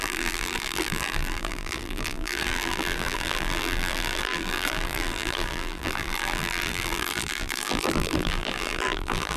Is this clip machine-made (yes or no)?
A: yes